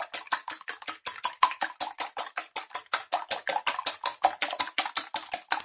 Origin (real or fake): real